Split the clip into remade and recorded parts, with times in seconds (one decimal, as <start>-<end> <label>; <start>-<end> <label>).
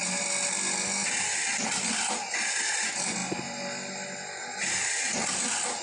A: 0.0-5.8 recorded